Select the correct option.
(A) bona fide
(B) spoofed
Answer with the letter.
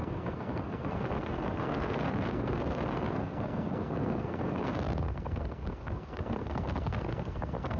B